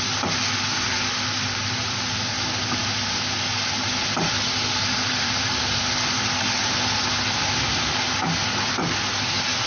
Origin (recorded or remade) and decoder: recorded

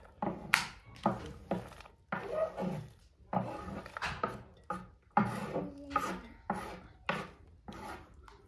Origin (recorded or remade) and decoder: recorded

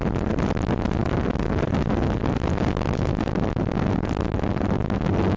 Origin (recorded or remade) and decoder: recorded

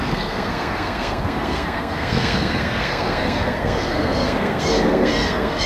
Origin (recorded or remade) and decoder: remade, codec, SNAC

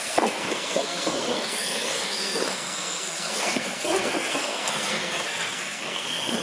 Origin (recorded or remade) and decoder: remade, codec, SNAC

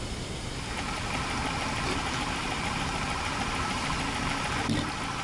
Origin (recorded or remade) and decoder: recorded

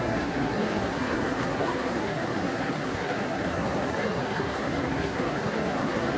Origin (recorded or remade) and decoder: remade, codec, SNAC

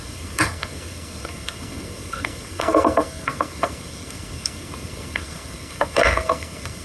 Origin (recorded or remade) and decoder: remade, codec, SNAC